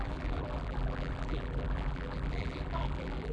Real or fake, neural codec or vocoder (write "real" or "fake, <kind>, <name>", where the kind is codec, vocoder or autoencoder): fake, vocoder, BigVGAN v2